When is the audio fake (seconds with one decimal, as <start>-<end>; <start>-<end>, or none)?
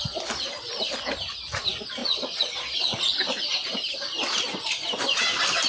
2.0-3.0